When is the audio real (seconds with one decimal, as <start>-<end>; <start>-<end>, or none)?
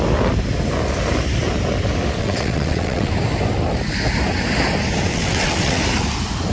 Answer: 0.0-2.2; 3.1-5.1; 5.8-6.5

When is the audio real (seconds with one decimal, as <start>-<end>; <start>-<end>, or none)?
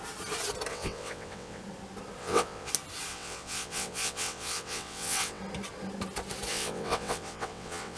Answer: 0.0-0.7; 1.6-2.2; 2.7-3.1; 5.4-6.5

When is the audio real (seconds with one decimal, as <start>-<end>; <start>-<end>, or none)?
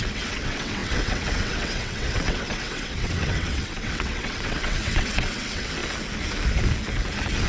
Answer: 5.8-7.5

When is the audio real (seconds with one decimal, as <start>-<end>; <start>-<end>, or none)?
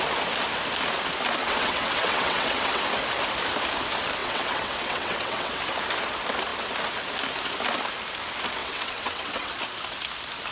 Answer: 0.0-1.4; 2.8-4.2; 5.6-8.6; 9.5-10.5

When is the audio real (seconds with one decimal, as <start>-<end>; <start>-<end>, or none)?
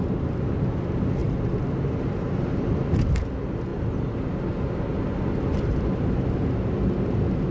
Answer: 0.0-7.5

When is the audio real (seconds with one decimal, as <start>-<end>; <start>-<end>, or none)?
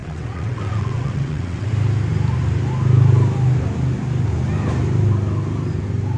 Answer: 1.7-6.2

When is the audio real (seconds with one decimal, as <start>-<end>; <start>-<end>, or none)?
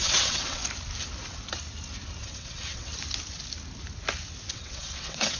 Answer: 0.6-2.2; 2.9-4.5